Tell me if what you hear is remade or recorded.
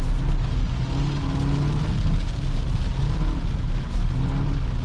recorded